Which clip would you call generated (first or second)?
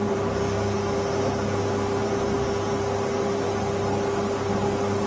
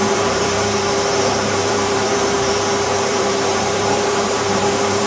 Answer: second